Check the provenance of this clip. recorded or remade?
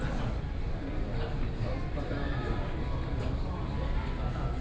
recorded